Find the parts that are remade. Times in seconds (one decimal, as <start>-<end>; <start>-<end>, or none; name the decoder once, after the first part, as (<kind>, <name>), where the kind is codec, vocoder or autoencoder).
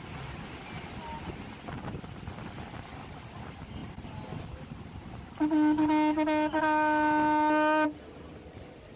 none